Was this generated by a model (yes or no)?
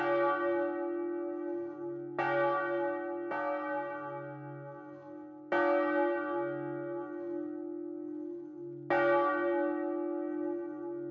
no